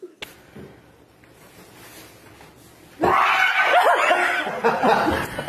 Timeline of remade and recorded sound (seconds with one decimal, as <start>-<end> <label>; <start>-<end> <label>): 0.0-4.6 recorded; 4.6-5.5 remade